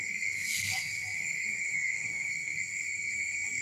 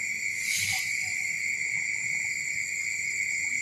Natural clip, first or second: second